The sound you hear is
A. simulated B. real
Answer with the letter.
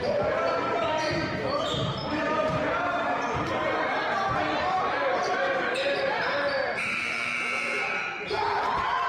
A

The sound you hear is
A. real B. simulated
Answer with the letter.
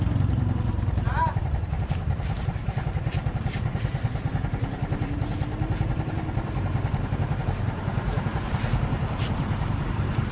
B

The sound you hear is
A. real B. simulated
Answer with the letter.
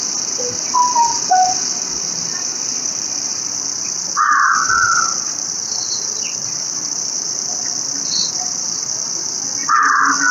B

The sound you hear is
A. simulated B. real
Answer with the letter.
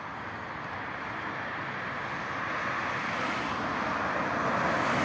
A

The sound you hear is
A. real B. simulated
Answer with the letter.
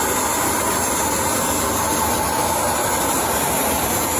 B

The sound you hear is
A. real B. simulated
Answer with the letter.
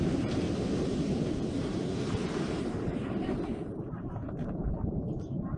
B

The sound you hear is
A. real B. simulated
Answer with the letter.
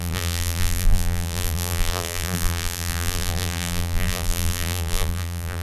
B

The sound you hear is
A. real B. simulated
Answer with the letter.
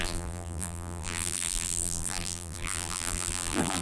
B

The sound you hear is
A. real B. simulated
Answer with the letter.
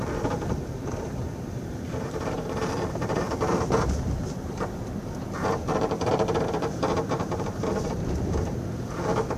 B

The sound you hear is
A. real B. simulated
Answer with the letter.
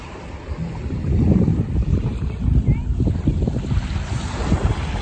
B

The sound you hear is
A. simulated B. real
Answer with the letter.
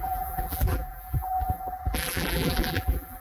A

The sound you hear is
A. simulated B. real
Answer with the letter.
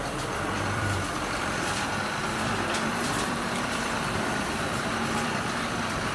A